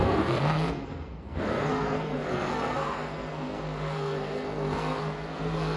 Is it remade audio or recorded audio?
remade